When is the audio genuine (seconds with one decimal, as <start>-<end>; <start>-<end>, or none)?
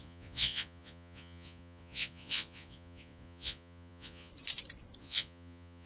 4.3-5.0